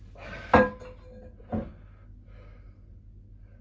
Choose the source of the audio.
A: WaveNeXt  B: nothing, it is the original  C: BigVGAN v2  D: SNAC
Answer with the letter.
B